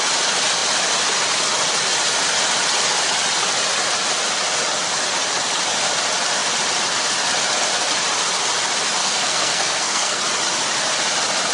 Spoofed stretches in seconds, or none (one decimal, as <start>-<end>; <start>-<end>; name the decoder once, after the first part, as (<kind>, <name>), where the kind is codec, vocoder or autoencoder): 9.0-10.2 (codec, SNAC)